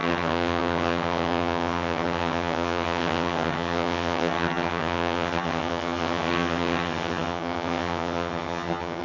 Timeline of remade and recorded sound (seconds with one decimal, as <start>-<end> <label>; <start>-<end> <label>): 0.0-9.0 remade